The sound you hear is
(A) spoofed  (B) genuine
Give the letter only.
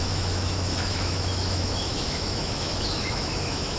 A